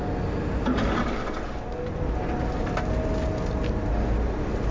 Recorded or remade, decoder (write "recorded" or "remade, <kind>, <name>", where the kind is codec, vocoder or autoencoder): recorded